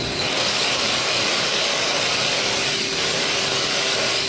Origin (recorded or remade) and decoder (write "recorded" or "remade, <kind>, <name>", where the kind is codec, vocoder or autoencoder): remade, codec, DAC